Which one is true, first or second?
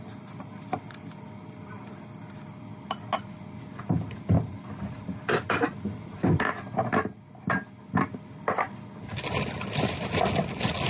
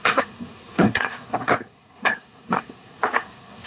first